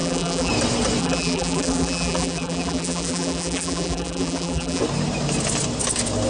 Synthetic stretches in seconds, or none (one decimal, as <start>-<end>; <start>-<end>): 0.0-0.5; 1.0-4.8